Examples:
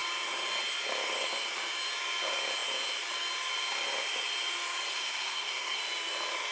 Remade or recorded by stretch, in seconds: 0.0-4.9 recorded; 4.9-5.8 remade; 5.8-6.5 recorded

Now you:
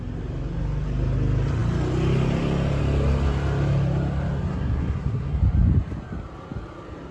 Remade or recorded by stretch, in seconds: 0.0-4.5 recorded; 4.5-5.4 remade; 5.4-7.1 recorded

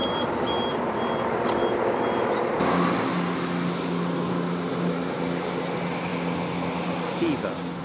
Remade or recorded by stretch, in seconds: 0.0-7.8 recorded